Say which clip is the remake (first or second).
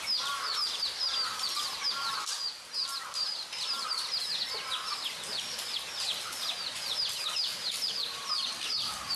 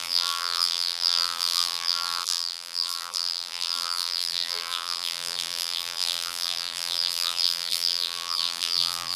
second